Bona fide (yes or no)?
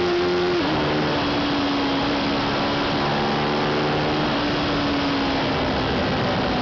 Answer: yes